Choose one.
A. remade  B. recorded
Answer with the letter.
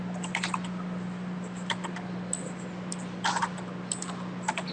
B